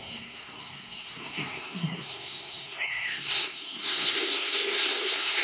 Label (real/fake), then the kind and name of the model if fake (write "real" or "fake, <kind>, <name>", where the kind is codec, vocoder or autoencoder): fake, codec, SNAC